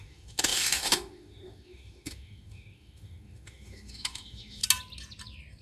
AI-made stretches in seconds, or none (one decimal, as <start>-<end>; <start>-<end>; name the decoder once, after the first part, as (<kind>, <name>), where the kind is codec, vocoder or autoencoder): 0.0-4.6 (autoencoder, DAC-VAE)